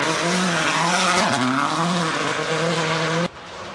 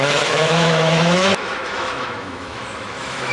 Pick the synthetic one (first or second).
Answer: second